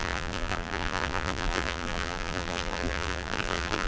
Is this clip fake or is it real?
fake